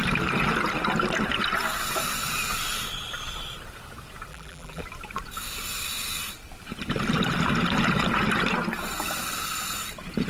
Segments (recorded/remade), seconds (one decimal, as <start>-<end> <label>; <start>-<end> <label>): 0.0-4.3 recorded; 4.3-4.8 remade; 4.8-10.3 recorded